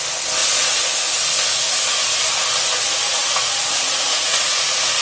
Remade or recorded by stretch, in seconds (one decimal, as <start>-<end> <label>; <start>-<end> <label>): 0.0-0.4 recorded; 0.4-1.1 remade; 1.1-3.2 recorded; 3.2-5.0 remade